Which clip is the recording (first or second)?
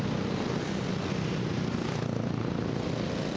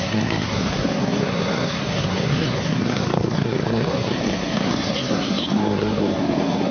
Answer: first